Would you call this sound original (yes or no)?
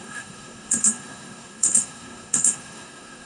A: no